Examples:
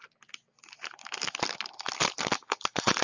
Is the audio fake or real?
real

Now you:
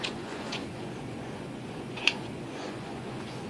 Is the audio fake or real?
fake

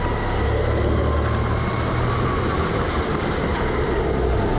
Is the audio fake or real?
real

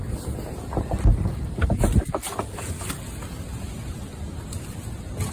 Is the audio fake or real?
real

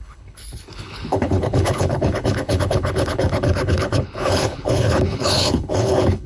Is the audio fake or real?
fake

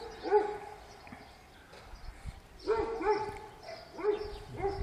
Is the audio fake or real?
real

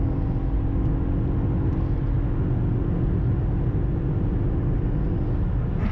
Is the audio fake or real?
real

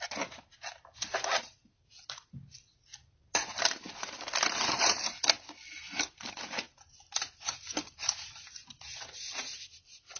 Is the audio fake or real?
real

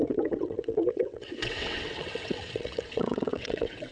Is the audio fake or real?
fake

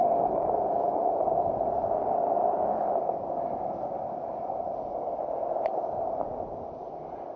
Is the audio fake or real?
real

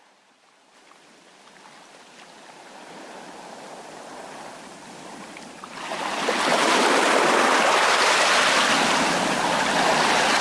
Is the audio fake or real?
real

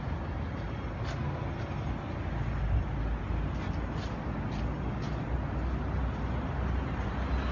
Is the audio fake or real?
real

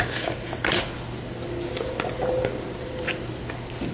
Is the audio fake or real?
real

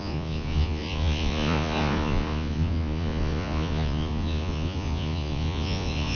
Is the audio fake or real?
fake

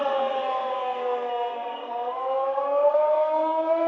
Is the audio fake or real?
fake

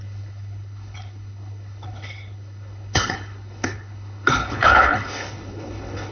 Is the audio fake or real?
fake